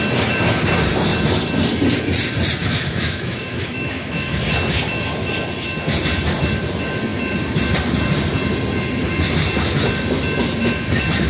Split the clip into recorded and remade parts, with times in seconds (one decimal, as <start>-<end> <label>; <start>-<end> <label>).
0.0-2.6 recorded; 2.6-4.4 remade; 4.4-11.3 recorded